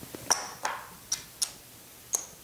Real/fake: real